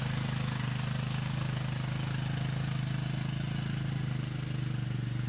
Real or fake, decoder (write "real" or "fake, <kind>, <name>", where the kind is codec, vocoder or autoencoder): real